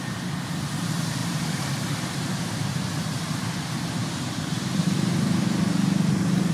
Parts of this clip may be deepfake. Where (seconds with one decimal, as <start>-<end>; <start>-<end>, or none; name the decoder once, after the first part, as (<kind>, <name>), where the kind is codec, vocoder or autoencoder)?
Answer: 1.2-5.1 (vocoder, BigVGAN v2)